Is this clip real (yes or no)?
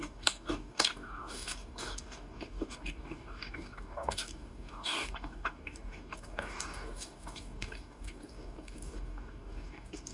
no